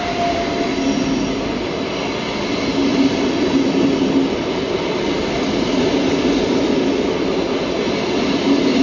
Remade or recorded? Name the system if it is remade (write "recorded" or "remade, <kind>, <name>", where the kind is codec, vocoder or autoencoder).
recorded